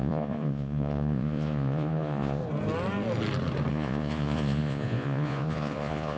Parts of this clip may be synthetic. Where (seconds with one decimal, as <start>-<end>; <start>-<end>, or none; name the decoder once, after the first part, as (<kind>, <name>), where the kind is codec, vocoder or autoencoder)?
0.0-2.4 (vocoder, Vocos); 3.7-6.2